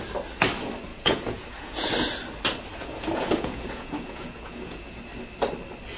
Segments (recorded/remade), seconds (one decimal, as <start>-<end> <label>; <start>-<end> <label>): 0.0-0.9 recorded; 0.9-1.9 remade; 1.9-2.7 recorded; 2.7-5.0 remade; 5.0-6.0 recorded